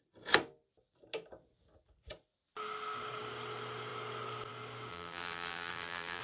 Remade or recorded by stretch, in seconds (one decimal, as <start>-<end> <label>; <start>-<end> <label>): 0.0-4.9 recorded; 4.9-6.2 remade